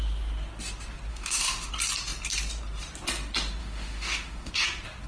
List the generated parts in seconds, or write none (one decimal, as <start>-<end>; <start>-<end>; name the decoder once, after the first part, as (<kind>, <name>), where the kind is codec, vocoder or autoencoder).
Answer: 1.1-1.7 (autoencoder, DAC-VAE); 3.6-4.5